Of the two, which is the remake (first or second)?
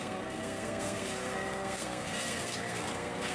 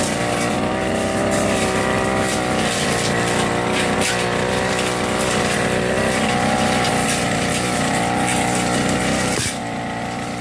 first